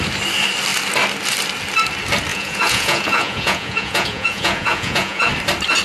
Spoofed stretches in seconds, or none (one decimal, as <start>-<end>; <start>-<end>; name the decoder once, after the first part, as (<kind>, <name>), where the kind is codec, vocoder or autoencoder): 2.3-5.3 (vocoder, Vocos)